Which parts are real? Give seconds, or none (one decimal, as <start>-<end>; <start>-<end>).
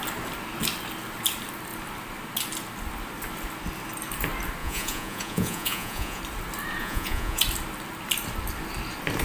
0.0-4.6; 6.2-6.8; 7.4-9.2